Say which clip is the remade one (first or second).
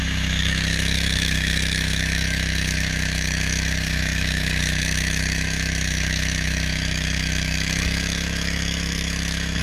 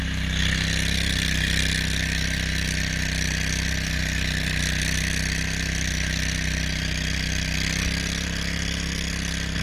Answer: first